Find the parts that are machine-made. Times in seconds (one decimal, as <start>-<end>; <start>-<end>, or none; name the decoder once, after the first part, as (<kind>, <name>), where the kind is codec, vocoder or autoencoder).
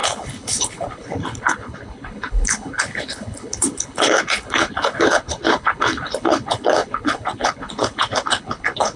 0.0-9.0 (codec, HILCodec)